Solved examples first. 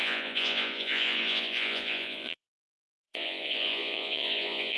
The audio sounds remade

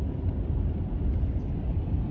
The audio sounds recorded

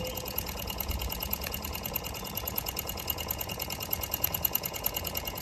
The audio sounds remade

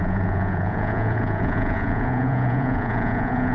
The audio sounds remade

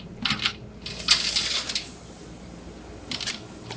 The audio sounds recorded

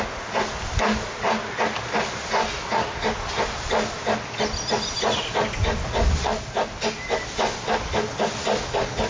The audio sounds recorded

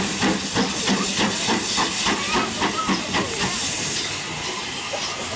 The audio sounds recorded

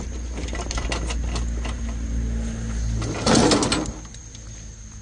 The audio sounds recorded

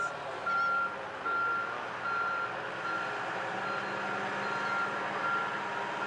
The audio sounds recorded